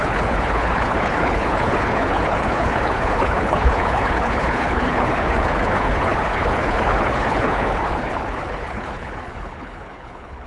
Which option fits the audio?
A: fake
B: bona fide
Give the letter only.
A